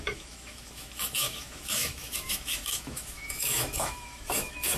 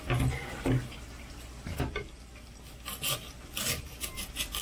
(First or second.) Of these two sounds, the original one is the second